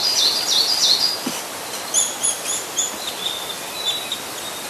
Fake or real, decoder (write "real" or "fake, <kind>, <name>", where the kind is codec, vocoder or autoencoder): real